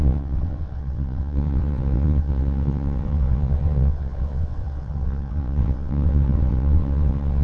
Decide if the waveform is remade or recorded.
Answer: remade